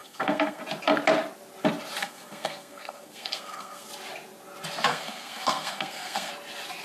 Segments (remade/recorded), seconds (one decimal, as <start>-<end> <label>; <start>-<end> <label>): 0.0-0.6 remade; 0.6-2.0 recorded; 2.0-3.9 remade; 3.9-4.9 recorded; 4.9-6.3 remade; 6.3-6.8 recorded